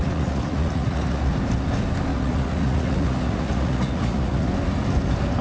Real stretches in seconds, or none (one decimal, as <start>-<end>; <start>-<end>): 1.3-2.1; 4.5-5.4

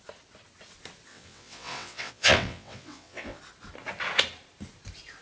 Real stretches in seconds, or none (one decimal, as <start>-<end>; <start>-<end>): 0.0-1.1; 3.4-5.2

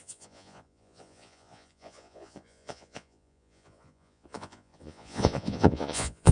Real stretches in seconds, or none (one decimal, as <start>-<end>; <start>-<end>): none

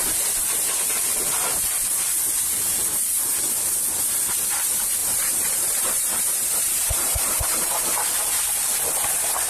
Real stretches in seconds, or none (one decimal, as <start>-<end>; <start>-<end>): 0.0-5.0; 8.0-9.5

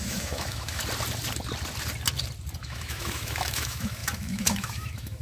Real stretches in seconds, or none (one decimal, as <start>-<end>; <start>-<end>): 0.8-2.6